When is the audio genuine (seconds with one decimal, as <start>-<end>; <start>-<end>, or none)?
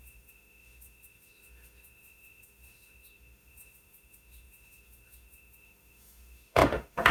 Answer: none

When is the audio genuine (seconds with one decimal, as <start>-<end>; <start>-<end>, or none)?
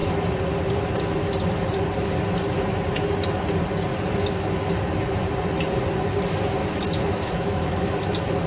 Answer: 0.0-6.6; 8.0-8.5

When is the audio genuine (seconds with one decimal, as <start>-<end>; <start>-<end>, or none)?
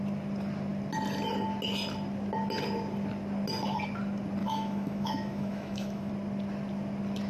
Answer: 0.0-4.4; 6.1-7.3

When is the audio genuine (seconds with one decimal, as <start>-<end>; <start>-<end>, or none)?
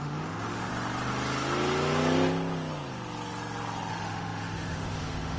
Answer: 0.7-3.9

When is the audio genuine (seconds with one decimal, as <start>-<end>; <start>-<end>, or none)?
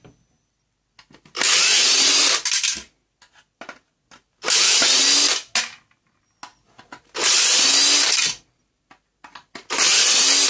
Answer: 0.0-10.5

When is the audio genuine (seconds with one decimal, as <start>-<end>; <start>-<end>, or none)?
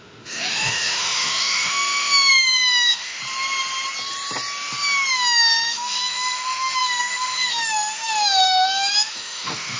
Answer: 3.2-5.1